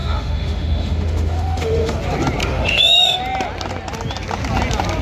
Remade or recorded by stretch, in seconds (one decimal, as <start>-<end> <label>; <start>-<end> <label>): 0.0-2.0 remade; 2.0-2.4 recorded; 2.4-3.2 remade; 3.2-5.0 recorded